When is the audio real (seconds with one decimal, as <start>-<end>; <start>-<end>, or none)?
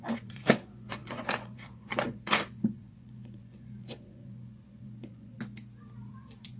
5.3-6.1